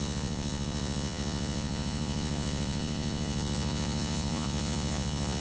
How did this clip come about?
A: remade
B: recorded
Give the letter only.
A